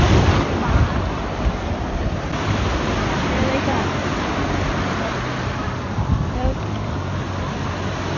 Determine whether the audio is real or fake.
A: real